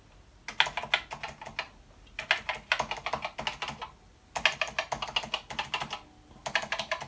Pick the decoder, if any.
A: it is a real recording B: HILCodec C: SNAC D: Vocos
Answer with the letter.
A